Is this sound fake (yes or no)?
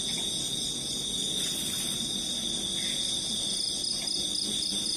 no